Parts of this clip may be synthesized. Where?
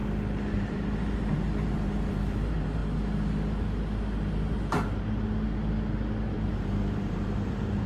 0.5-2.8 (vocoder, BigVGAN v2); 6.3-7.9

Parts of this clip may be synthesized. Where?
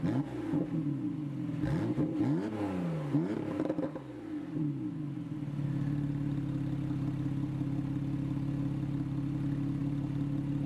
none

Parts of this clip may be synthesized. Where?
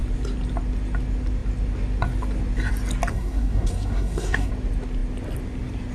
3.1-4.5 (codec, SNAC)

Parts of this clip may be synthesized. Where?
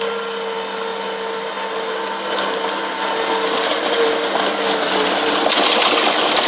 none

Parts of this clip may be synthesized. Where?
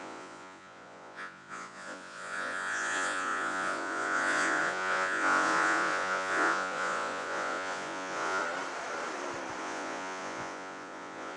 0.0-8.4 (vocoder, Vocos); 9.6-11.4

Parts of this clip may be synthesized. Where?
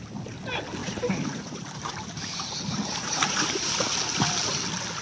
0.8-3.8 (vocoder, BigVGAN v2)